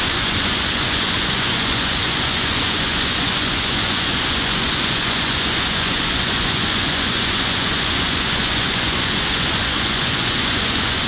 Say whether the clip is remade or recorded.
remade